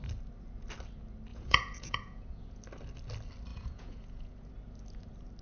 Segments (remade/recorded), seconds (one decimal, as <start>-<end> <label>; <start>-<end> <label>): 0.0-1.3 recorded; 1.3-2.6 remade; 2.6-3.5 recorded; 3.5-4.5 remade; 4.5-5.4 recorded